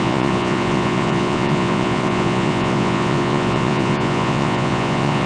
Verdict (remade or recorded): remade